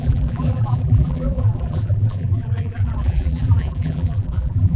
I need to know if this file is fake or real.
fake